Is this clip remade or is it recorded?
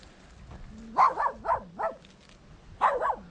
recorded